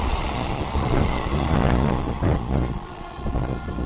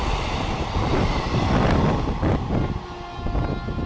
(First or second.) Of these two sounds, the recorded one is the second